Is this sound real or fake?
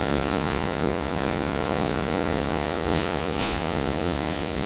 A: fake